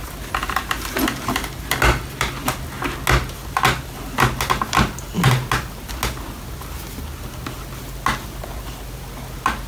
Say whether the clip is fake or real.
real